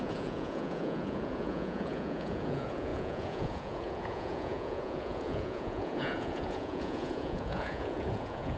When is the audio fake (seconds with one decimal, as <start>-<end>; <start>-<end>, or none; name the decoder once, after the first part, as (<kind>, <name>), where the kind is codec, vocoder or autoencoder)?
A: 0.0-8.6 (vocoder, Vocos)